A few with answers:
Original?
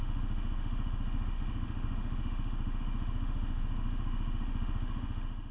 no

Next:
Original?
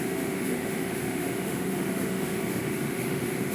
no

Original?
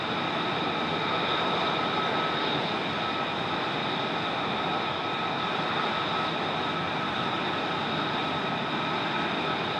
yes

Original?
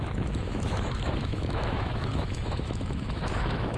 no